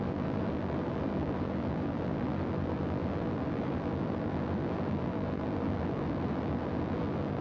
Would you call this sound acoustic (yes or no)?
no